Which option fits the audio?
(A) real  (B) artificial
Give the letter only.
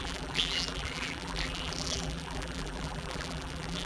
B